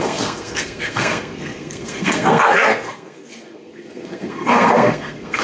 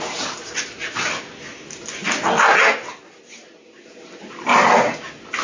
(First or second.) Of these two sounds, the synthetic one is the first